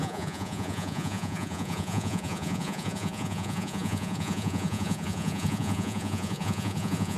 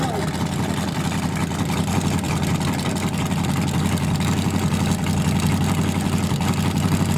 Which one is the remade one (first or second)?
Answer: first